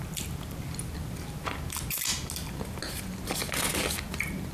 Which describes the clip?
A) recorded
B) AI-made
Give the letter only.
A